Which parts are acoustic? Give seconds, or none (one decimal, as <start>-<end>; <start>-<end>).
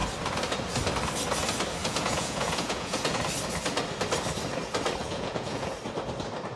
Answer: 0.0-1.8; 3.2-5.0; 5.8-6.6